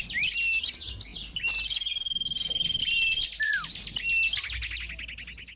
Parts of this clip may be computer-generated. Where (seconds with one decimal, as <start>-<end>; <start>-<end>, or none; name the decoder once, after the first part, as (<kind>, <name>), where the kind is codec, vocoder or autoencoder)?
1.1-2.8 (vocoder, BigVGAN v2)